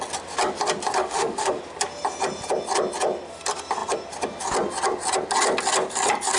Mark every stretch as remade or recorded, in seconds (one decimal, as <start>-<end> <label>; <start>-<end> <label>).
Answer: 0.0-1.0 recorded; 1.0-1.6 remade; 1.6-6.4 recorded